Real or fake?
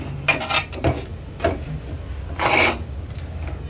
real